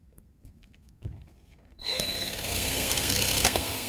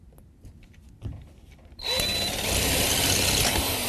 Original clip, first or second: second